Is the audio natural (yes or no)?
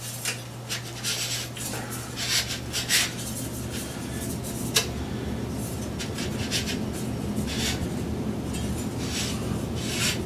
yes